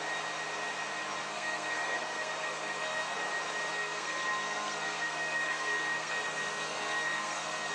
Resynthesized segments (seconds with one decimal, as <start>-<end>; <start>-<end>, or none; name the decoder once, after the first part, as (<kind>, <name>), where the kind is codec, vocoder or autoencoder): 1.2-3.3 (codec, SNAC); 3.7-7.7